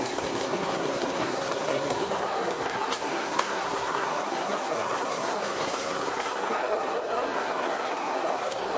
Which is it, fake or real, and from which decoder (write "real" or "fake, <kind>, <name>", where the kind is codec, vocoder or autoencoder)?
fake, codec, SNAC